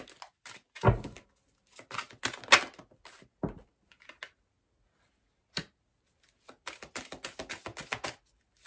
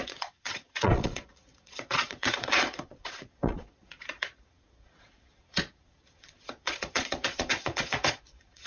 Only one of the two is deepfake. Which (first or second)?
second